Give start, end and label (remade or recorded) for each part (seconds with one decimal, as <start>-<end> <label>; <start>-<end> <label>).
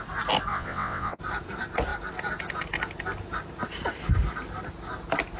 0.0-0.5 recorded; 0.5-1.2 remade; 1.2-5.4 recorded